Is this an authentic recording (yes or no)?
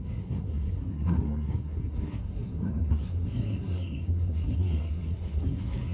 no